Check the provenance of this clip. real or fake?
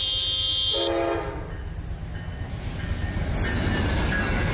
real